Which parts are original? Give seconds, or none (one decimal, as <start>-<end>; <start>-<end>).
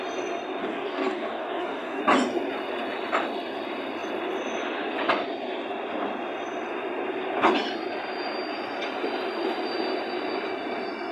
0.0-0.6; 2.0-11.1